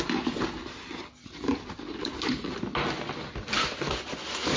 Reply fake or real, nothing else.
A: real